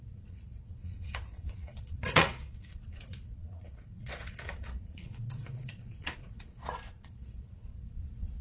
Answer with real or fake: fake